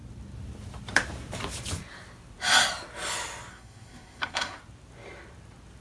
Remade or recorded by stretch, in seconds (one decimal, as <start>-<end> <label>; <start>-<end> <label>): 0.0-3.5 recorded; 3.5-4.6 remade; 4.6-5.8 recorded